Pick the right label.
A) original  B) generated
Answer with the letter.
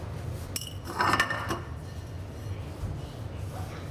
A